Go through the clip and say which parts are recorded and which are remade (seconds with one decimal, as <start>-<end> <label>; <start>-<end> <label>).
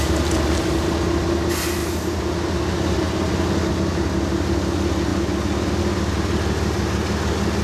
0.0-7.6 recorded